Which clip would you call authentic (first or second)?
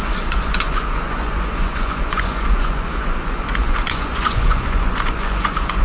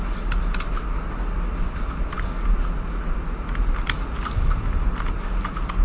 second